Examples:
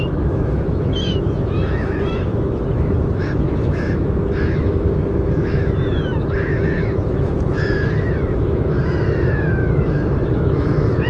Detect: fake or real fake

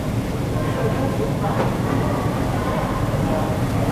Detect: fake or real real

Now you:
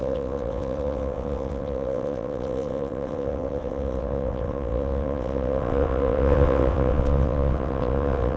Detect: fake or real fake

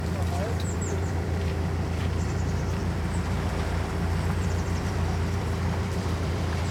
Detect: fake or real fake